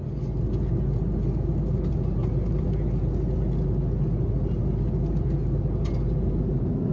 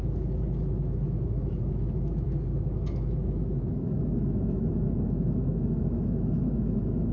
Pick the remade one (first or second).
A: second